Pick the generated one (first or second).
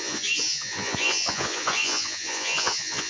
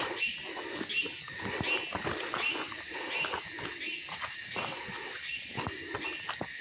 first